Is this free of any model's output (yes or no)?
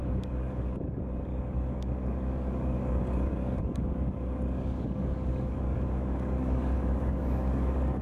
no